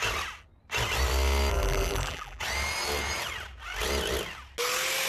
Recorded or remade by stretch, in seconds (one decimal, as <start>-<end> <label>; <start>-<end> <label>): 0.0-1.5 recorded; 1.5-2.4 remade; 2.4-5.1 recorded